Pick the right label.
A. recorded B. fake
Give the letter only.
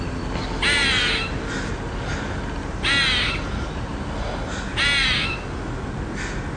A